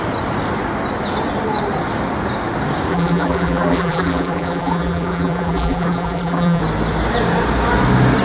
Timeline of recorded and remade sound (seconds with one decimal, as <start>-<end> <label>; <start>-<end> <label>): 0.0-2.9 recorded; 2.9-6.6 remade; 6.6-8.2 recorded